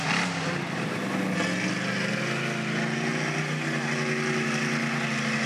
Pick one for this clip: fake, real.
real